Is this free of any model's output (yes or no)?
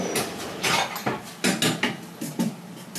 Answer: yes